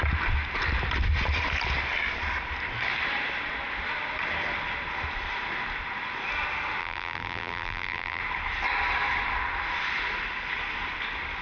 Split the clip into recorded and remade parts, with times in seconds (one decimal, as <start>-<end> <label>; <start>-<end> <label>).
0.0-6.8 recorded; 6.8-8.2 remade; 8.2-11.4 recorded